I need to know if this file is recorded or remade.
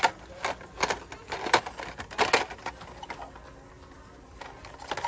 recorded